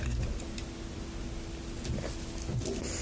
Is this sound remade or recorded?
recorded